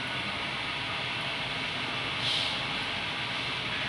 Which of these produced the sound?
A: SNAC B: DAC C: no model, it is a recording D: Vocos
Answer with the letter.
C